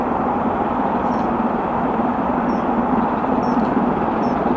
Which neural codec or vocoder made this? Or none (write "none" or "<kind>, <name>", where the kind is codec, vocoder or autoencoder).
none